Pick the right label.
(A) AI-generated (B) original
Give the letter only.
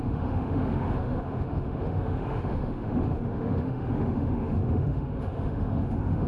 A